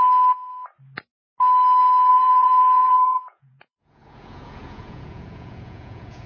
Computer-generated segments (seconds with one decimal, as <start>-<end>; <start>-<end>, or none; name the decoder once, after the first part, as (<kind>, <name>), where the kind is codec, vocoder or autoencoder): 2.1-6.3 (vocoder, Vocos)